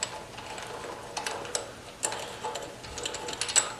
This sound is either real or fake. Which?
real